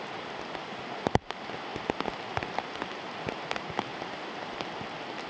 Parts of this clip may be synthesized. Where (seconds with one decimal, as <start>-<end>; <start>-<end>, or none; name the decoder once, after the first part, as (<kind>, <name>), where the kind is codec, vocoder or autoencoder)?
none